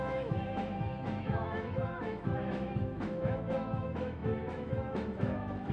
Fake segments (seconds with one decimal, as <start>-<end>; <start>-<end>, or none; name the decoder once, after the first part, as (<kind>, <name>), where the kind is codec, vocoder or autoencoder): 0.0-5.7 (autoencoder, DAC-VAE)